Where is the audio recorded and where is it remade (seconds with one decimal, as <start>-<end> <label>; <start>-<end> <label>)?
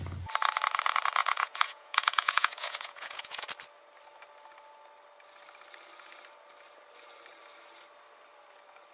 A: 0.0-1.2 recorded; 1.2-3.5 remade; 3.5-8.9 recorded